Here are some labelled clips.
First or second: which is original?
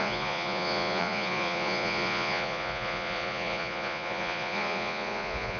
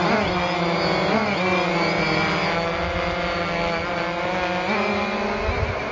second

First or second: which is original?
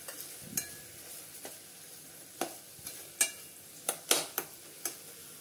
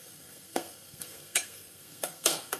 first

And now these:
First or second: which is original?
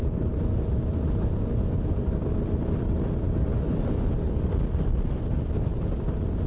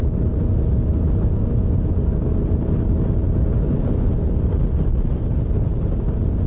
second